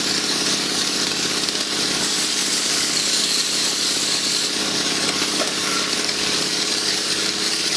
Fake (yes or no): yes